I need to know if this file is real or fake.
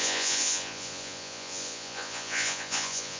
fake